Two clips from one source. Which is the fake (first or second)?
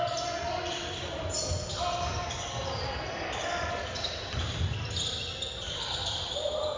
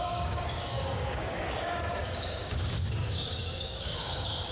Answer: second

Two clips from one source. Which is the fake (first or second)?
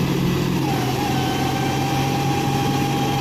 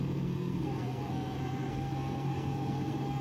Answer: second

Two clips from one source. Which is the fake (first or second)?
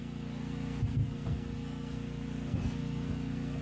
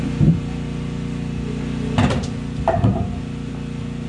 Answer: first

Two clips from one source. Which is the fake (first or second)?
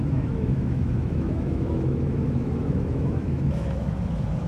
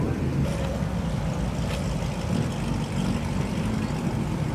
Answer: first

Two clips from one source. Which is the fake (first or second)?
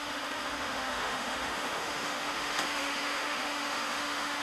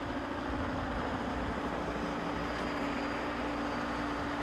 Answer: first